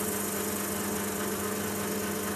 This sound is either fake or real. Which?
real